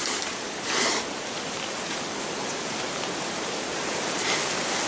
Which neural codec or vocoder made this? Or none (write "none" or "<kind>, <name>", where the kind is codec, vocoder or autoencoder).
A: none